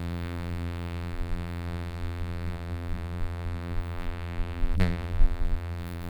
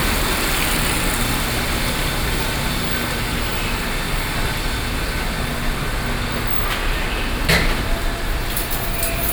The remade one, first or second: first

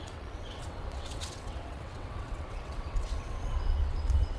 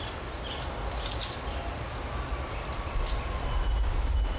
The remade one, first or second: first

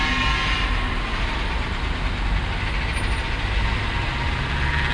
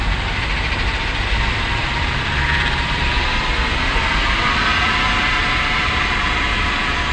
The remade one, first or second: second